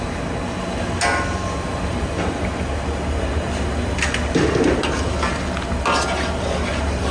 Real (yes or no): yes